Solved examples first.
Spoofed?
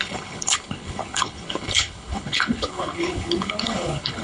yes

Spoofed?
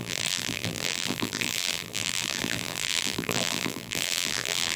yes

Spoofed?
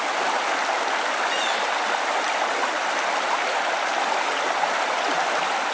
no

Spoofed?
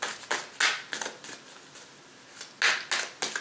no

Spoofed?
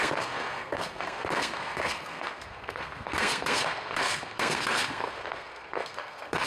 yes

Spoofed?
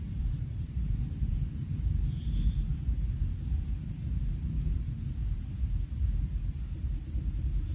yes